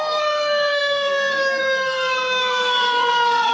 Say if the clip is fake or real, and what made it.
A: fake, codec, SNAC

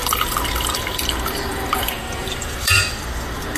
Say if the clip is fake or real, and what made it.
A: fake, vocoder, BigVGAN v2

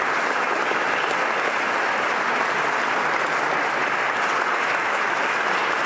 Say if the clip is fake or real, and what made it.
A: real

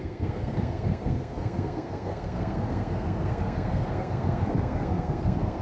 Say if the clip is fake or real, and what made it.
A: fake, codec, SNAC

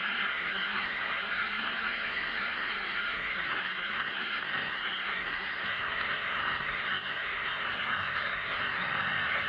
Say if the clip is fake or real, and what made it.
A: fake, codec, SNAC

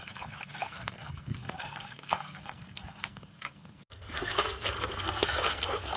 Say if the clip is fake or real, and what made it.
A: fake, codec, SNAC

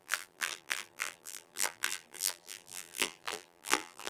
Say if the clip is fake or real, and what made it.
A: fake, vocoder, BigVGAN v2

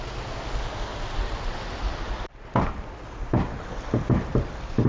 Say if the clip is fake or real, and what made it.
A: real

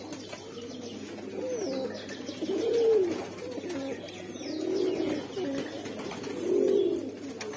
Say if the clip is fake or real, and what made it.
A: real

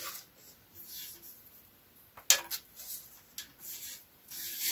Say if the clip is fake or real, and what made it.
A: real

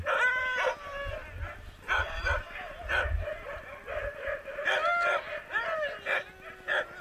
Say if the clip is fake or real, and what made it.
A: real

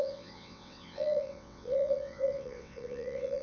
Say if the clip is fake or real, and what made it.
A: fake, vocoder, WaveNeXt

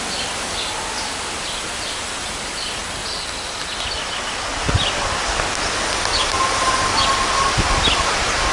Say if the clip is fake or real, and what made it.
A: real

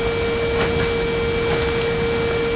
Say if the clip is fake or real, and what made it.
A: real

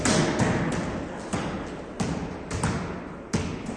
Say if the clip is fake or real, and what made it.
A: real